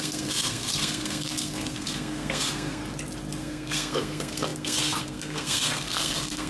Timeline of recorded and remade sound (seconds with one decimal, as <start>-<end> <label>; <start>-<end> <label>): 0.0-2.8 remade; 2.8-3.4 recorded; 3.4-6.5 remade